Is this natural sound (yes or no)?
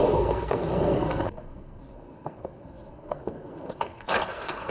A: no